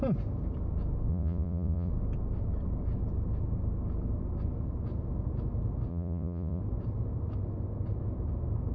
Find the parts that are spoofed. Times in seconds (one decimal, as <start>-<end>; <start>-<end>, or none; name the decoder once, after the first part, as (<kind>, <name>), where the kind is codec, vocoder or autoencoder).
1.1-1.9 (vocoder, Vocos); 5.9-6.6